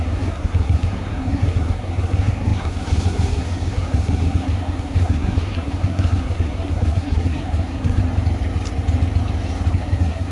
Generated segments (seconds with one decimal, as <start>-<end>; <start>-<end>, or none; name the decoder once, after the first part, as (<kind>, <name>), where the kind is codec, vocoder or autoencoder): 0.0-8.0 (codec, SNAC); 9.7-10.3